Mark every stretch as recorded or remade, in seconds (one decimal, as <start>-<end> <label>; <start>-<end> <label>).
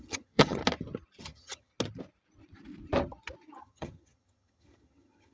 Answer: 0.0-0.6 remade; 0.6-1.2 recorded; 1.2-1.7 remade; 1.7-3.6 recorded; 3.6-5.3 remade